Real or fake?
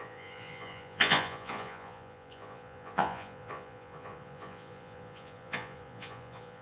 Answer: fake